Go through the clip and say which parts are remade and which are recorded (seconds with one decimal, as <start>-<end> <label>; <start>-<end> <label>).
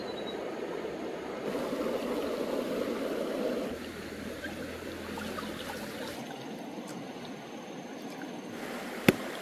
0.0-9.4 recorded